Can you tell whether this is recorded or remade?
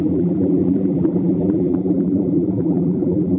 remade